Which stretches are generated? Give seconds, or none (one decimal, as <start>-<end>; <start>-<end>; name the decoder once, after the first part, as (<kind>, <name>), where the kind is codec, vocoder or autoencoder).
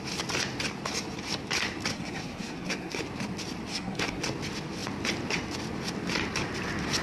1.9-3.0 (codec, SNAC); 3.7-4.2